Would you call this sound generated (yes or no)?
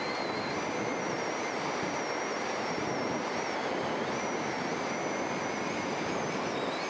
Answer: no